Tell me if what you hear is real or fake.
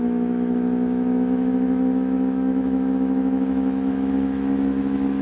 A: fake